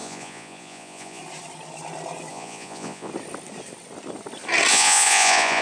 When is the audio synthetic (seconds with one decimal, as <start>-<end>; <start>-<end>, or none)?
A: 0.0-1.2; 2.3-3.1; 4.7-5.6